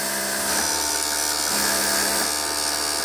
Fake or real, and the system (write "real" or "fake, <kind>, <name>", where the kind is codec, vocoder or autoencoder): real